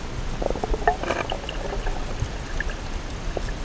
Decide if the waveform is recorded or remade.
recorded